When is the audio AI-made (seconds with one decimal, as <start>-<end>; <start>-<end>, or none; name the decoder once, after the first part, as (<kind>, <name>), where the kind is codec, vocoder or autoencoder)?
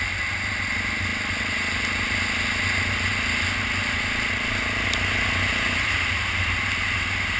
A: none